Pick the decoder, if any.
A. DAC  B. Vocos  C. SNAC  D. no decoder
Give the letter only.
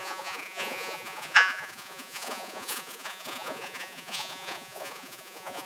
B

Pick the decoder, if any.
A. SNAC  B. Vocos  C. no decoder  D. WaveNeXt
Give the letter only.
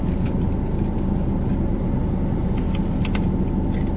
C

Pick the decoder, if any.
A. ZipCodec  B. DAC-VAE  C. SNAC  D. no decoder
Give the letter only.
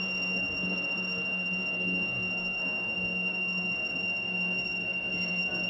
C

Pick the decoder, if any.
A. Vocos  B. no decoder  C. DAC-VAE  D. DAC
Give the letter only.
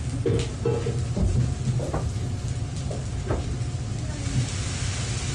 B